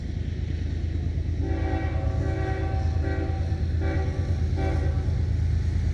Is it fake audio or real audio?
real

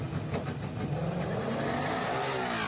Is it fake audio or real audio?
real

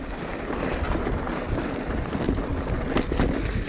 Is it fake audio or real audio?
real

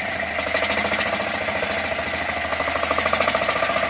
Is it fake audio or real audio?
real